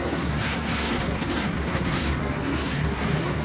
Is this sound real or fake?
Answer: fake